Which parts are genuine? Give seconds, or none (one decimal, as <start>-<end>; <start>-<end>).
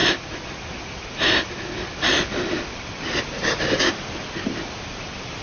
0.0-5.4